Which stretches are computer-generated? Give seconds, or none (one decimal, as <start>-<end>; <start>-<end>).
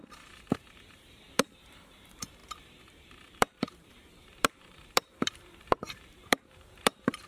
0.0-7.3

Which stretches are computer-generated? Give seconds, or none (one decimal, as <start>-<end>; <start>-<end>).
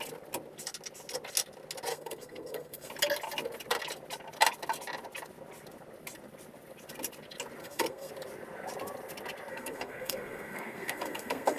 1.9-2.9; 7.6-8.1; 9.5-11.6